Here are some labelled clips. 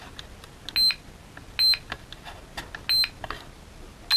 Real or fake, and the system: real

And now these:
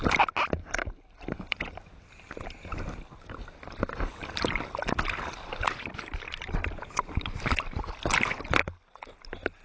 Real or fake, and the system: real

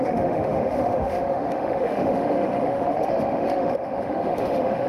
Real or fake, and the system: fake, autoencoder, DAC-VAE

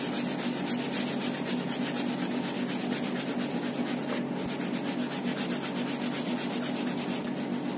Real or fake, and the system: real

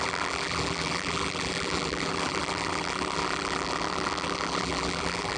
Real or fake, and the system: fake, vocoder, BigVGAN v2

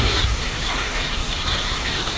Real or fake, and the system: fake, codec, SNAC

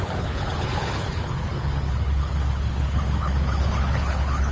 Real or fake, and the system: fake, codec, HILCodec